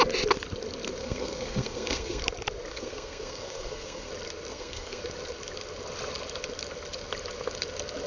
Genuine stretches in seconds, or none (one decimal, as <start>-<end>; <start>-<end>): 0.0-1.0; 2.2-2.7; 4.1-4.5; 5.0-8.1